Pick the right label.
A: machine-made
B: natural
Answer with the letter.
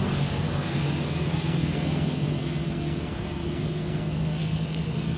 A